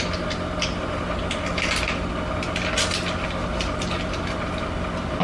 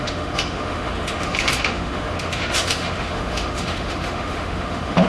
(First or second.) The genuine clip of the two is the first